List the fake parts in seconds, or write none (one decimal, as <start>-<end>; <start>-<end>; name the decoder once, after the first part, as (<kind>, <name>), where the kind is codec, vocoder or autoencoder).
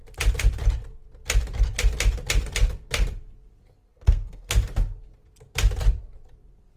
3.9-4.5 (codec, SNAC)